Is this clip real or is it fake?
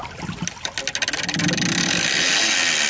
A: real